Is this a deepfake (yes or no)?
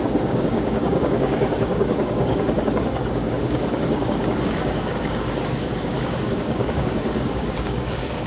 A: yes